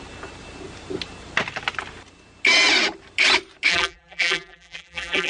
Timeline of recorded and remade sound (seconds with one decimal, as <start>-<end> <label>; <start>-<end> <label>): 0.0-3.7 recorded; 3.7-5.3 remade